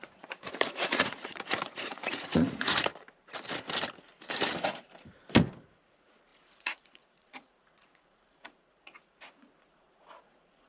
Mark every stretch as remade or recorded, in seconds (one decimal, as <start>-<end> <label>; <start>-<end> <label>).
0.0-2.9 remade; 2.9-5.6 recorded; 5.6-10.7 remade